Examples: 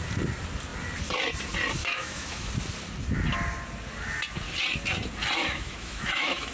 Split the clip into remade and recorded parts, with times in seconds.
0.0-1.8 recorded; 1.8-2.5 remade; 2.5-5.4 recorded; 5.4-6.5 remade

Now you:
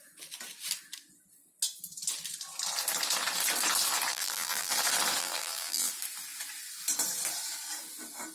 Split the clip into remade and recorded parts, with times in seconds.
0.0-4.1 recorded; 4.1-4.7 remade; 4.7-5.2 recorded; 5.2-5.9 remade; 5.9-8.3 recorded

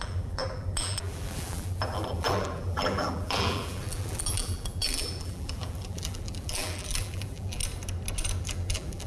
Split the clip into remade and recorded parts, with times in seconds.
0.0-7.6 remade; 7.6-8.4 recorded; 8.4-9.1 remade

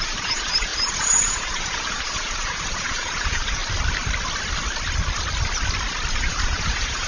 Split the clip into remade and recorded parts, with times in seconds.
0.0-3.6 remade; 3.6-6.1 recorded; 6.1-7.1 remade

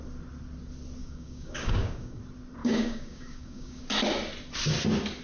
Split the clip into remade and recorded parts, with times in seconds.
0.0-1.0 recorded; 1.0-2.2 remade; 2.2-2.6 recorded; 2.6-3.8 remade; 3.8-5.2 recorded